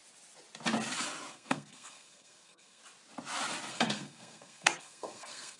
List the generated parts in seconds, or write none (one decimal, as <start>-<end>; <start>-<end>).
1.3-2.8; 3.7-5.6